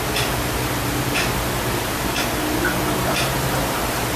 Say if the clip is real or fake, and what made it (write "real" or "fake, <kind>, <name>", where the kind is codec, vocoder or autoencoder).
real